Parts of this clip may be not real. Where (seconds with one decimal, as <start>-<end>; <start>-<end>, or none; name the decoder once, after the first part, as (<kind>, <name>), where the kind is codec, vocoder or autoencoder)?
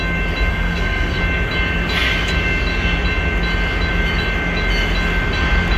0.5-1.2 (codec, SNAC)